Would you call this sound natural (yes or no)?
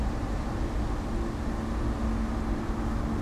yes